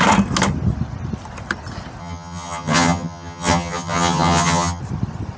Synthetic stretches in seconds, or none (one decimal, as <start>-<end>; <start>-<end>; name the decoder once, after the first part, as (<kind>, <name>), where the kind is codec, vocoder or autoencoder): 2.0-4.8 (vocoder, HiFi-GAN)